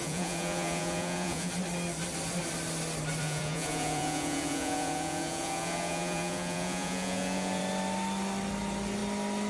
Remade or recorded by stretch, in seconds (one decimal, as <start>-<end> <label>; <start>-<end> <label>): 0.0-1.5 remade; 1.5-3.2 recorded; 3.2-7.6 remade; 7.6-9.5 recorded